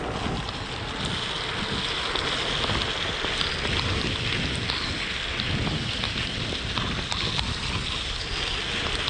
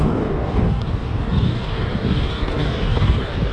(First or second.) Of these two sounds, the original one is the first